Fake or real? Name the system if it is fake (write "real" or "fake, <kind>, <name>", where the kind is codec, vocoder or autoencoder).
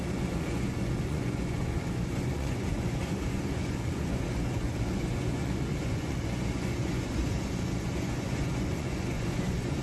fake, vocoder, Vocos